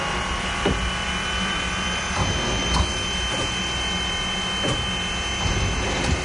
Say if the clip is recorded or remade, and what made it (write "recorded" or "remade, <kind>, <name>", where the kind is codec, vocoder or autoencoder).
recorded